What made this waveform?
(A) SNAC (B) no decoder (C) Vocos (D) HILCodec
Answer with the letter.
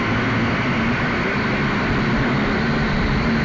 B